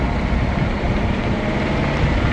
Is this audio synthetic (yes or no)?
yes